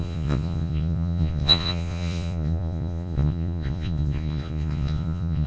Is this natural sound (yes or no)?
no